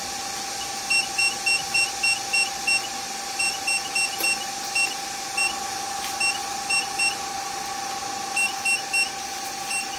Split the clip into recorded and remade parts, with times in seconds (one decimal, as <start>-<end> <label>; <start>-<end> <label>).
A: 0.0-10.0 recorded